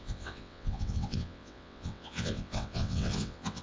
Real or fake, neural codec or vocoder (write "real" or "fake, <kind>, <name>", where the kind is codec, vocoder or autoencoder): fake, vocoder, WaveNeXt